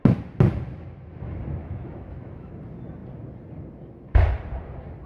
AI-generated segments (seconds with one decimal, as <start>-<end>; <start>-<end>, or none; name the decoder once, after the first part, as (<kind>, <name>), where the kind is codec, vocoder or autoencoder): 1.6-2.5 (autoencoder, DAC-VAE)